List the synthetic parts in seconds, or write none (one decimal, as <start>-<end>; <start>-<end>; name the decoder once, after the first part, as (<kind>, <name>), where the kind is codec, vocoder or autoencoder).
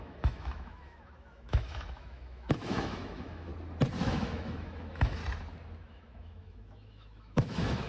0.0-3.5 (autoencoder, DAC-VAE); 4.0-5.2; 5.9-7.9